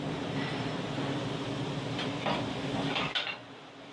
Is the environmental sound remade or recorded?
recorded